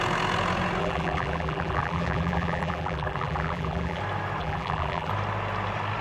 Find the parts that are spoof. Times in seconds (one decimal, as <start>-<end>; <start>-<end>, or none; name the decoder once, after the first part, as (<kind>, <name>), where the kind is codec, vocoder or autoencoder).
0.8-4.0 (vocoder, BigVGAN v2); 4.4-5.1